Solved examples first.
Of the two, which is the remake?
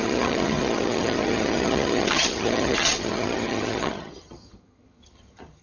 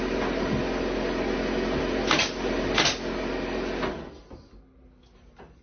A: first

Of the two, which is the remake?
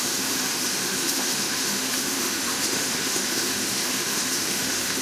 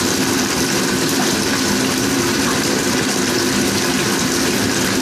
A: first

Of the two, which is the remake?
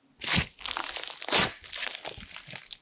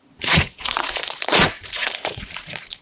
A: second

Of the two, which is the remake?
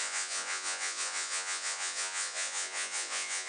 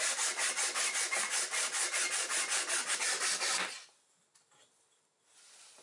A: first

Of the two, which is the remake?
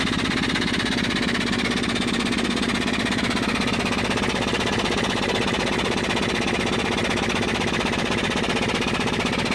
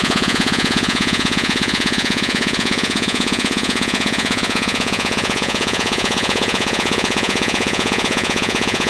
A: second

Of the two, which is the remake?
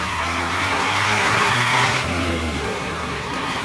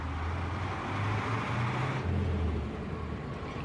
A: first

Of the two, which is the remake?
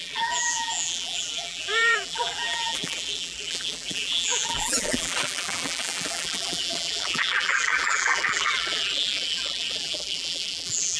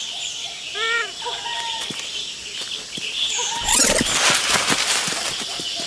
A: first